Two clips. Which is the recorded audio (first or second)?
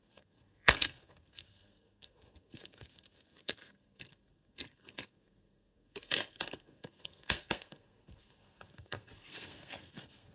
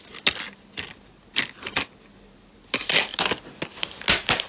second